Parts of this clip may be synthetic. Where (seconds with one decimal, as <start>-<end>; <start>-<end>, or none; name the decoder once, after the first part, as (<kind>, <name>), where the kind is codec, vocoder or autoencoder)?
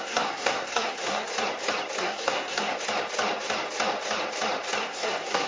0.0-1.3 (codec, SNAC); 2.0-2.7; 4.8-5.5